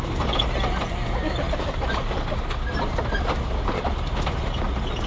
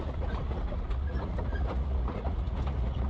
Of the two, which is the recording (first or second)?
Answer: first